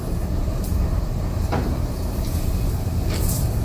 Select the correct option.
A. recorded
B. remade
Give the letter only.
B